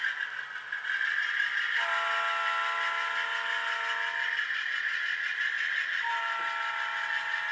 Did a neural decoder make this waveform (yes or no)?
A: no